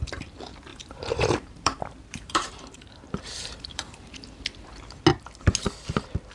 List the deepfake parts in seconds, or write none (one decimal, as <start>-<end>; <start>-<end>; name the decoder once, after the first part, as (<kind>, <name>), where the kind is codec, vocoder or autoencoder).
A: 0.7-4.3 (vocoder, BigVGAN v2)